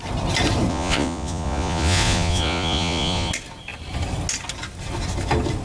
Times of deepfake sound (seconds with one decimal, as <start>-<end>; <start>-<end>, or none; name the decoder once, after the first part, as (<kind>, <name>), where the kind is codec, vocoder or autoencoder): 0.7-3.3 (vocoder, Vocos)